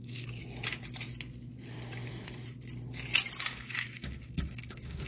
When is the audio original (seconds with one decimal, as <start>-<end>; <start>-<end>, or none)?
0.4-3.5